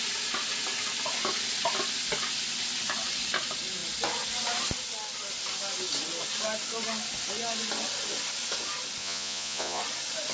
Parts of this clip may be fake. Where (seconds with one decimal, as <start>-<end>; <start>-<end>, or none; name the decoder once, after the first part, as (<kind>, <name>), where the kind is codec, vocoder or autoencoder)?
9.0-9.8 (vocoder, Vocos)